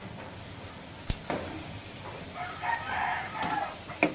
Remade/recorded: recorded